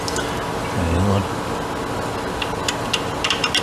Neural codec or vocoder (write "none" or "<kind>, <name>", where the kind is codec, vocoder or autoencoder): none